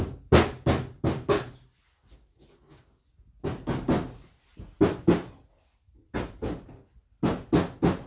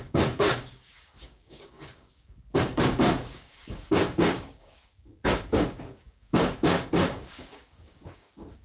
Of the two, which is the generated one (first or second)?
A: second